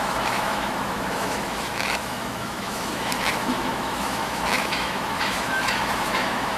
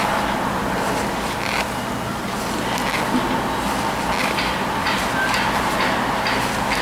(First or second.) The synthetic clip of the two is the first